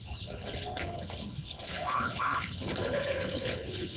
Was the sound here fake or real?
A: fake